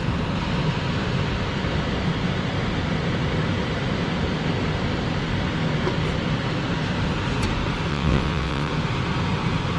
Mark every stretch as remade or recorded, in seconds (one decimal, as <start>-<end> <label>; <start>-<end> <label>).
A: 0.0-7.9 recorded; 7.9-8.7 remade; 8.7-9.8 recorded